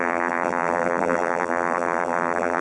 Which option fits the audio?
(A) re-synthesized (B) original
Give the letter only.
A